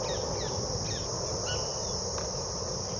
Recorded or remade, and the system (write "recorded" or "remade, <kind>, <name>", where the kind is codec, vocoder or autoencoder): recorded